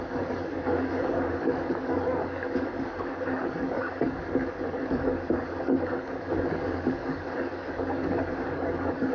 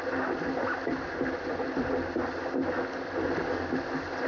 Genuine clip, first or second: second